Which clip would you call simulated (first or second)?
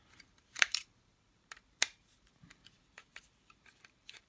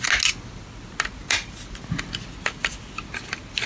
first